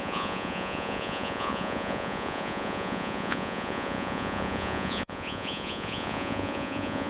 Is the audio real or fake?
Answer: fake